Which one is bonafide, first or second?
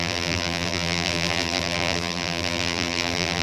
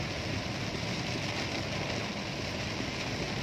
second